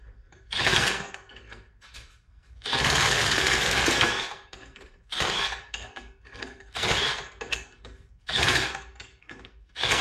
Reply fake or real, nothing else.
fake